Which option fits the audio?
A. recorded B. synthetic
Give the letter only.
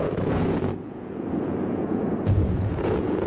B